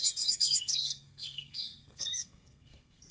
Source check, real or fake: fake